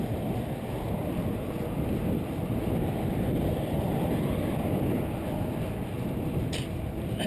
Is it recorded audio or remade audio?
remade